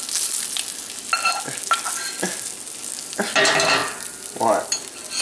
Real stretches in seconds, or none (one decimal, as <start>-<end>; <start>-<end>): 0.0-5.2